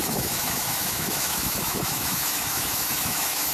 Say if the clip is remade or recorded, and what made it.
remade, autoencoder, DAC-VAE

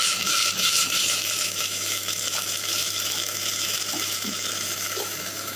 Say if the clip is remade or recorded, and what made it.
remade, autoencoder, DAC-VAE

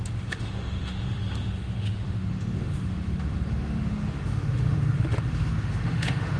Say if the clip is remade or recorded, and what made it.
remade, autoencoder, DAC-VAE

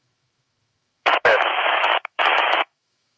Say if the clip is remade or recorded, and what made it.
remade, autoencoder, DAC-VAE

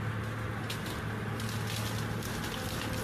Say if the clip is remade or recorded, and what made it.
recorded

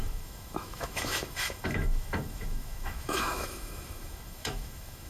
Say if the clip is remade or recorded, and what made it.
remade, autoencoder, DAC-VAE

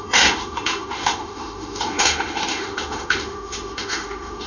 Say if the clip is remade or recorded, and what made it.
remade, autoencoder, DAC-VAE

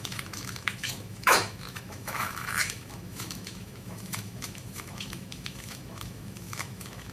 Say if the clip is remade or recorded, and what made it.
remade, autoencoder, DAC-VAE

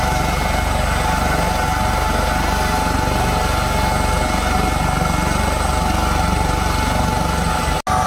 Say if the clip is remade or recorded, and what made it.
recorded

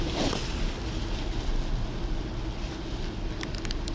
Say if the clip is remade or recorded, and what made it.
recorded